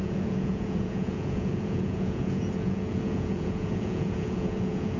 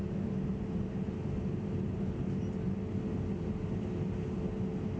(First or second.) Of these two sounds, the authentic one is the second